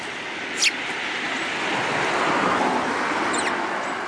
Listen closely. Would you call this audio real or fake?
real